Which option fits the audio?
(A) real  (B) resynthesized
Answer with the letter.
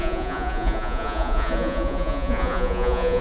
B